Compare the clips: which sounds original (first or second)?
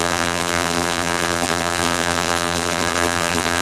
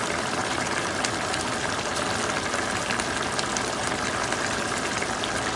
second